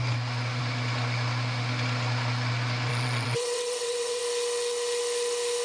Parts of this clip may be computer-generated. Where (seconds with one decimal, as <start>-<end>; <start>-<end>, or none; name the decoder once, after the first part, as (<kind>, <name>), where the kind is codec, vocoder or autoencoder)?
2.9-4.2 (vocoder, WaveNeXt)